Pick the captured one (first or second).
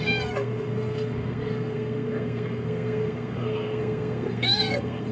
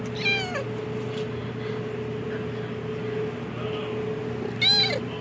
second